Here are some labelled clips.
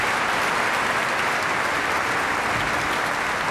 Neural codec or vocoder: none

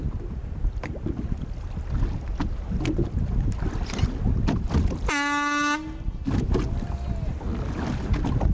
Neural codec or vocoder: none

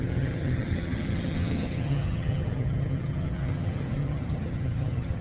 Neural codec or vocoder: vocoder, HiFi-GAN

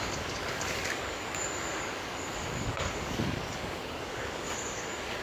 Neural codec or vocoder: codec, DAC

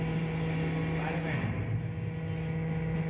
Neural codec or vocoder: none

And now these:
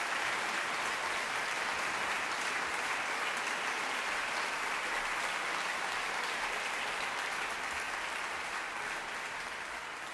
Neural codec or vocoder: none